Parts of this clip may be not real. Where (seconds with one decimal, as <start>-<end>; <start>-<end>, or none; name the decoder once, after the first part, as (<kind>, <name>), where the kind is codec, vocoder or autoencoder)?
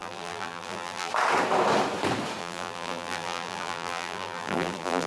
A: 0.0-1.1 (vocoder, BigVGAN v2); 2.4-5.1